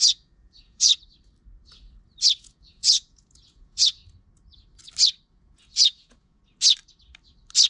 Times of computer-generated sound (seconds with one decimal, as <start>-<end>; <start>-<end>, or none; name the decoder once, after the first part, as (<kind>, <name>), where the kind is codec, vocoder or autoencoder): 0.0-0.9 (vocoder, Vocos); 2.4-4.0; 5.3-6.4